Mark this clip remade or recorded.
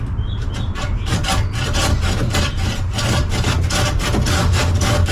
recorded